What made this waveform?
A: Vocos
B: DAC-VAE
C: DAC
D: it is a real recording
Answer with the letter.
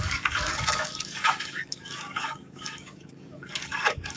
C